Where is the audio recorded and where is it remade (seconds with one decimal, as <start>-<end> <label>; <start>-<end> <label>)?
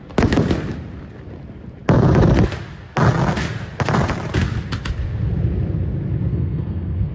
0.0-6.3 recorded; 6.3-7.1 remade